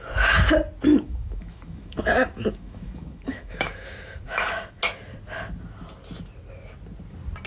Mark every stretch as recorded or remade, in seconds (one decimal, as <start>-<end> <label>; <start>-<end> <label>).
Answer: 0.0-0.9 recorded; 0.9-4.8 remade; 4.8-7.5 recorded